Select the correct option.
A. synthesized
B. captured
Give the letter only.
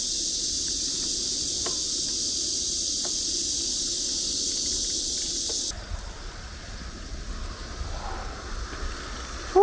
B